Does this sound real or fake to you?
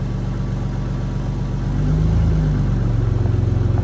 real